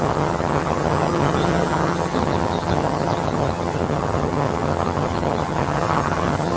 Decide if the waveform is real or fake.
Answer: fake